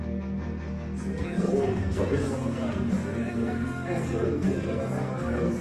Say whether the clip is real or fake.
fake